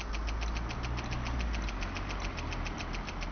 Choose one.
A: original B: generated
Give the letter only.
A